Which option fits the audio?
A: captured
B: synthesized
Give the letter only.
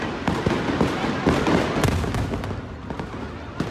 A